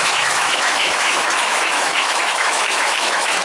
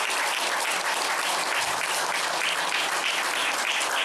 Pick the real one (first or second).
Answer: second